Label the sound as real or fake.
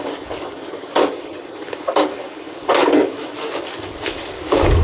fake